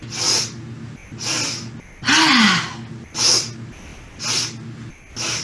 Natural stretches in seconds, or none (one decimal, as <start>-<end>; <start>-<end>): 0.0-5.4